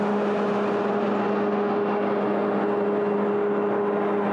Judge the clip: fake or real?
real